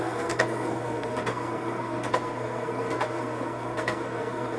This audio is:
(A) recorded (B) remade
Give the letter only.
B